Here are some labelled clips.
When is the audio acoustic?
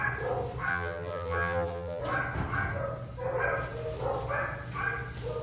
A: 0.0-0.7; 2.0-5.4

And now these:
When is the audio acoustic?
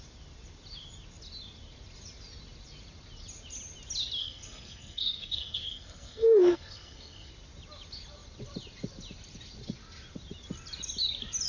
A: 0.0-4.2; 7.3-11.5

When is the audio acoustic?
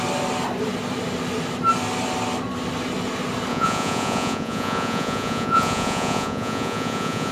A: 0.0-3.5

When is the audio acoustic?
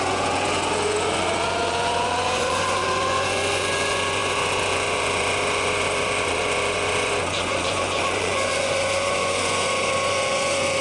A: none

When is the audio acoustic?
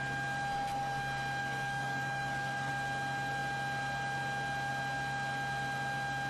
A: 0.0-1.4; 2.7-6.3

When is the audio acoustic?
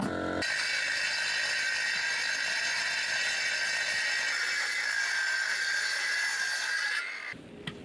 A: 0.0-7.8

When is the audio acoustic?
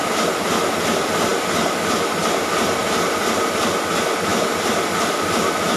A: 0.0-5.8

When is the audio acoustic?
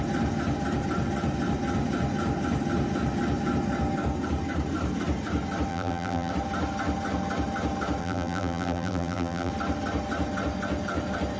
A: 0.0-5.7; 6.3-8.0; 9.5-11.4